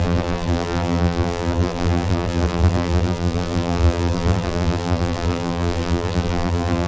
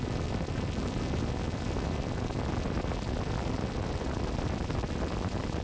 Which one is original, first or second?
second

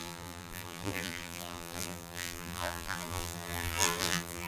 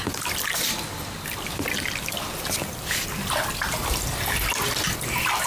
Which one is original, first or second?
second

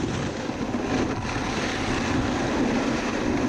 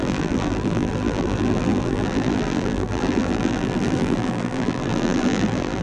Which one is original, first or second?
first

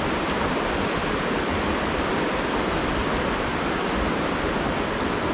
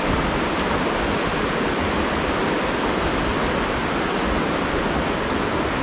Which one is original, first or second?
second